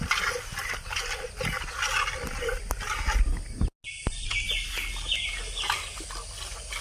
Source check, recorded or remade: recorded